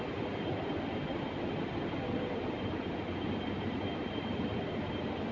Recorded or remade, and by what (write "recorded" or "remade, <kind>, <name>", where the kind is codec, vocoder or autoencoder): recorded